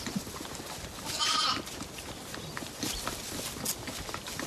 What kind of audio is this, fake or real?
real